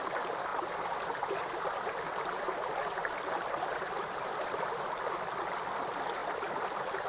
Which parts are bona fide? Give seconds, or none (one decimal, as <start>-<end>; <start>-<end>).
0.0-7.1